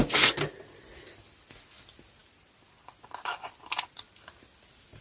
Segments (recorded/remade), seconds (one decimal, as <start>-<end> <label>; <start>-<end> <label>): 0.0-5.0 recorded